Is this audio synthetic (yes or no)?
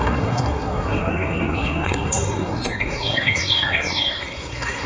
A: yes